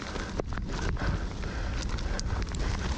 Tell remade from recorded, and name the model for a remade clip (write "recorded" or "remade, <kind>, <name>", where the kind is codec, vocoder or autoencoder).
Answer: recorded